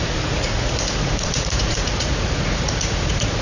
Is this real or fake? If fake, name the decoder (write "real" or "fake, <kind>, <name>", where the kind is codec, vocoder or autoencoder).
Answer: fake, vocoder, Vocos